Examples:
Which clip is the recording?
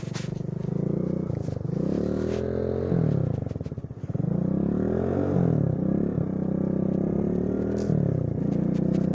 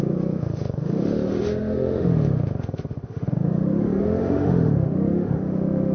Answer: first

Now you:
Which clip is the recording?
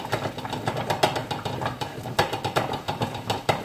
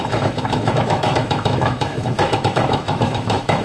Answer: first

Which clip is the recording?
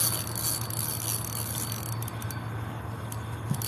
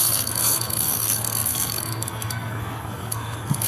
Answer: first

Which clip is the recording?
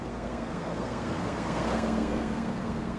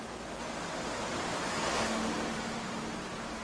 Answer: second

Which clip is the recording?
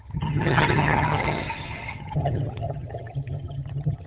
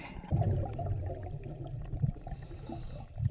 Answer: second